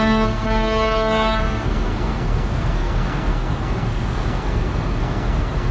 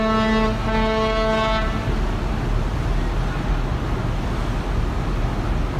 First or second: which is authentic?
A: second